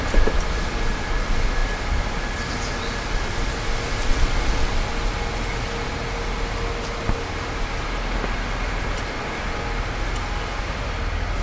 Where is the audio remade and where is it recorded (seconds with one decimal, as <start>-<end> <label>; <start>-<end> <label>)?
0.0-4.1 recorded; 4.1-4.7 remade; 4.7-11.4 recorded

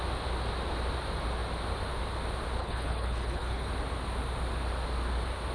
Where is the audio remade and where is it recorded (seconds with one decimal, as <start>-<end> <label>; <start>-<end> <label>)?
0.0-2.6 recorded; 2.6-3.7 remade; 3.7-5.5 recorded